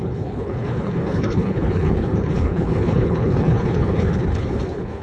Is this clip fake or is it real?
fake